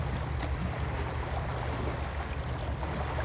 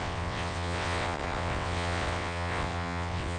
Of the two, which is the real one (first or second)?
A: first